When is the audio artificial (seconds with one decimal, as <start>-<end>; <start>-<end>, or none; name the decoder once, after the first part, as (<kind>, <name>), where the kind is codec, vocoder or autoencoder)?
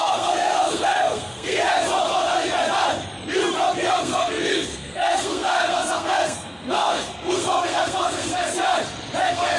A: 0.0-1.6 (codec, SNAC); 3.9-8.5; 9.2-9.6